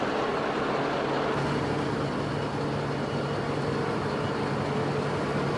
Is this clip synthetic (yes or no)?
no